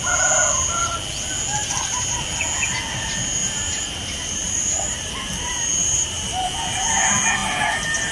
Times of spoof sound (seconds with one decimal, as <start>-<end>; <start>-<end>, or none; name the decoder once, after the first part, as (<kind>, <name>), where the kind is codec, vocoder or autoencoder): 1.6-2.2 (vocoder, BigVGAN v2); 3.4-6.5